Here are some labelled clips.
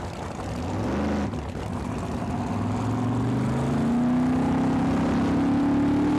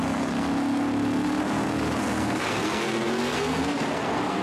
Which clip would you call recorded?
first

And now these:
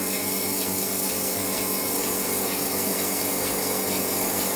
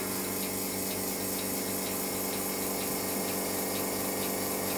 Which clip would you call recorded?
second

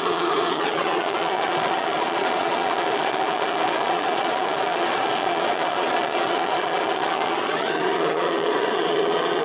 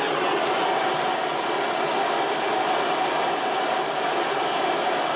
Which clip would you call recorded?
second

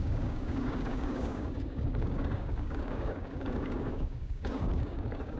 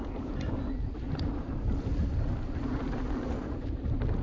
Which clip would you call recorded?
second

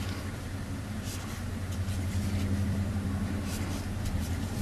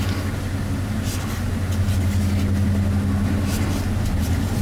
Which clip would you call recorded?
second